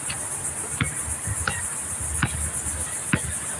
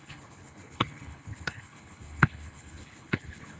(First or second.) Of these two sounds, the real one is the first